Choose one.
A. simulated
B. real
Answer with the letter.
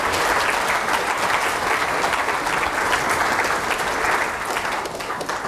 B